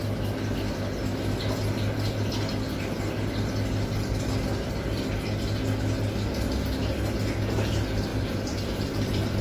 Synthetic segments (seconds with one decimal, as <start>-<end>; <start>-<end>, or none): 8.1-9.4